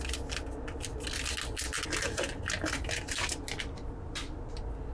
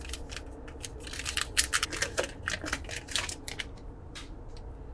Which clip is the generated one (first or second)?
second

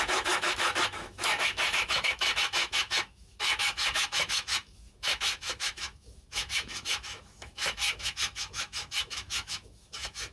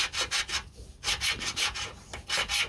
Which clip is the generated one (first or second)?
first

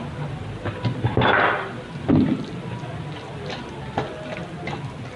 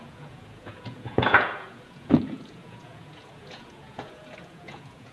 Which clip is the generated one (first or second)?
second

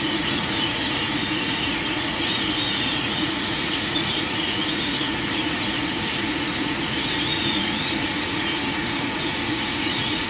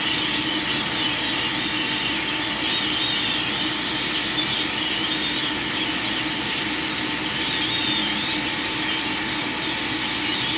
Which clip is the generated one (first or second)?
first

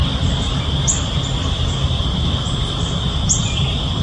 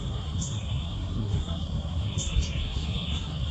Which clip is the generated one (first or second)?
second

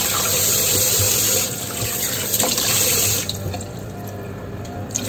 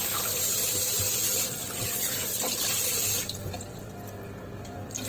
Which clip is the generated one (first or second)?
first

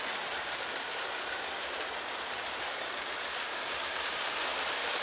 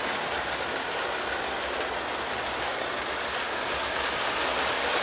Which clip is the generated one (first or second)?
first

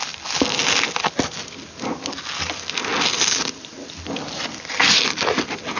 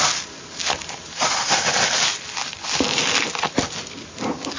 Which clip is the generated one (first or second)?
second